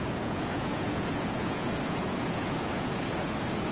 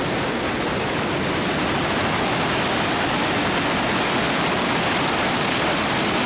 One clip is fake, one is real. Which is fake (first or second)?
first